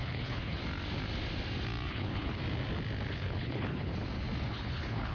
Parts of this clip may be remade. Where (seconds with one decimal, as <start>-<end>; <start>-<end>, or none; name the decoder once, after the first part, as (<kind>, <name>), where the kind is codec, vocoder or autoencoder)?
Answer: 0.0-0.6 (codec, HILCodec); 1.9-2.4; 3.1-3.9; 4.4-5.1